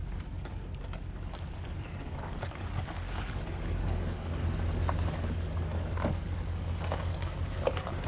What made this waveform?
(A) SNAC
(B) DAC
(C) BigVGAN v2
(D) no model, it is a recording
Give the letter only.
B